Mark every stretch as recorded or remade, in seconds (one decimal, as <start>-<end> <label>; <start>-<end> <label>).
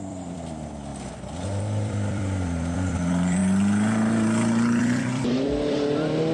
0.0-0.9 remade; 0.9-1.6 recorded; 1.6-3.4 remade; 3.4-4.8 recorded; 4.8-6.3 remade